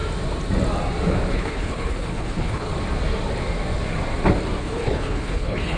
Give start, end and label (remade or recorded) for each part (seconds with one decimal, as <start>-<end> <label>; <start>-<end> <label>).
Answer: 0.0-1.3 recorded; 1.3-2.7 remade; 2.7-4.6 recorded; 4.6-5.8 remade